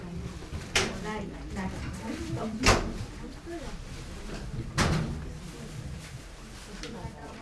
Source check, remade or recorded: recorded